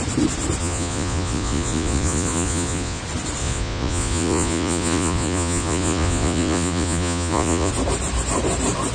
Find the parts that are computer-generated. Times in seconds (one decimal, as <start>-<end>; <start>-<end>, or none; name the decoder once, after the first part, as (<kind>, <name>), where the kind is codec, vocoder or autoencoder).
0.6-3.0 (vocoder, Vocos); 3.4-7.7